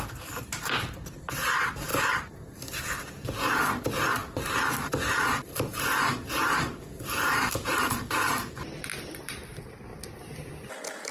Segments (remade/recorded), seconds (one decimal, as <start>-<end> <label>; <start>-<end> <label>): 0.0-4.2 recorded; 4.2-8.4 remade; 8.4-9.9 recorded; 9.9-10.4 remade; 10.4-11.1 recorded

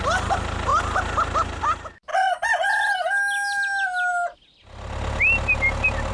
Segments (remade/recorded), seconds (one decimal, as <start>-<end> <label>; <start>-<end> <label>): 0.0-2.1 recorded; 2.1-2.7 remade; 2.7-6.1 recorded

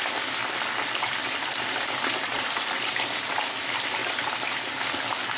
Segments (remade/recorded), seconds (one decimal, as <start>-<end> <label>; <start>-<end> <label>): 0.0-1.2 recorded; 1.2-1.8 remade; 1.8-2.3 recorded; 2.3-3.3 remade; 3.3-4.0 recorded; 4.0-5.4 remade